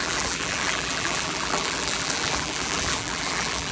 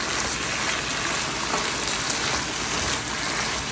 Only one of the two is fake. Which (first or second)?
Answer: first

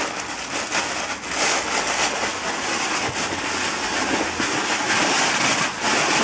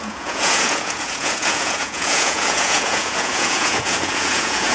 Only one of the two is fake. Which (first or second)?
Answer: second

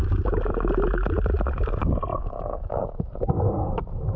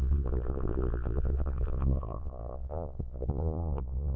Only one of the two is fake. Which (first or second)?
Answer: second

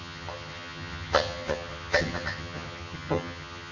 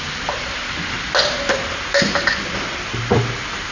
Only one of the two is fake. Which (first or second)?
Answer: first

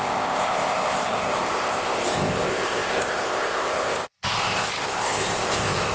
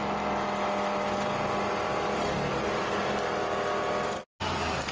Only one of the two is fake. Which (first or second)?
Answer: first